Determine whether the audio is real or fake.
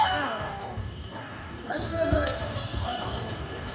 fake